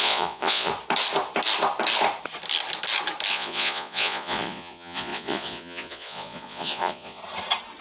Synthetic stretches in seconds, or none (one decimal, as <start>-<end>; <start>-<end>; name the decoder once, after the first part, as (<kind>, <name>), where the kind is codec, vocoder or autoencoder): 0.0-0.7 (vocoder, Vocos); 3.3-7.2